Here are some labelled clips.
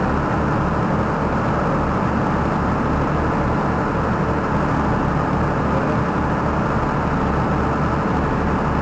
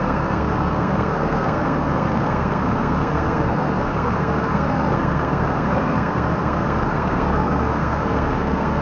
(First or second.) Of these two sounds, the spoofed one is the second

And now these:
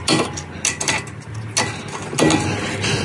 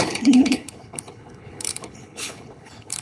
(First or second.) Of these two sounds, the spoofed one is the second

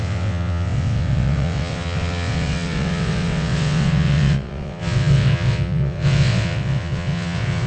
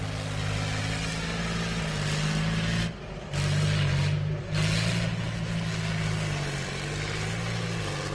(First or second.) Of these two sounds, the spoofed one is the first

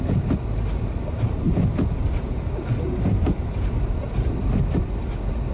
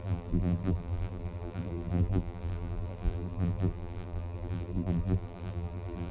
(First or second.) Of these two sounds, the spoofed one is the second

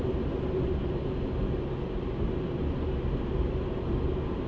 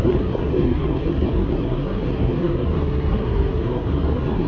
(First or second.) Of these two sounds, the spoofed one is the second